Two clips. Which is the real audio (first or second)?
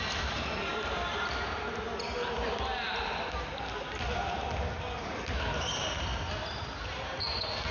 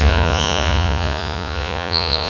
first